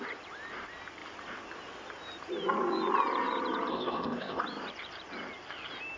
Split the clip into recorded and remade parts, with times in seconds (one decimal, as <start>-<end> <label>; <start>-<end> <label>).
0.0-3.7 recorded; 3.7-4.4 remade; 4.4-6.0 recorded